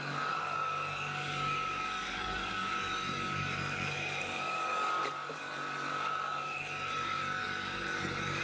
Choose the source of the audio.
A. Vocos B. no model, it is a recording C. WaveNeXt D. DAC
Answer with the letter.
D